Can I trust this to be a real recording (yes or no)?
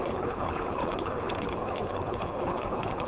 no